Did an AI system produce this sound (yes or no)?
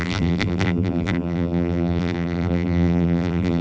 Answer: yes